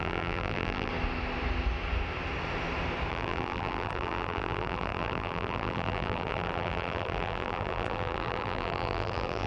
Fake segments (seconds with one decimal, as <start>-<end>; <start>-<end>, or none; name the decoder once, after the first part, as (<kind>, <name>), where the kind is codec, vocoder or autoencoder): 0.0-0.9 (vocoder, BigVGAN v2); 3.1-9.5